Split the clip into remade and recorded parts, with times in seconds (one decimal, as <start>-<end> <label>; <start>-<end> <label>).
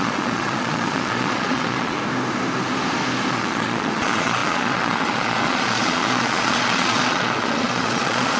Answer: 0.0-2.0 remade; 2.0-3.3 recorded; 3.3-8.4 remade